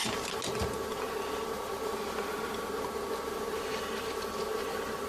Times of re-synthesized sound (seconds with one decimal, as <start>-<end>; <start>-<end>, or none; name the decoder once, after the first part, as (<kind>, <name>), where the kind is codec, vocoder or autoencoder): none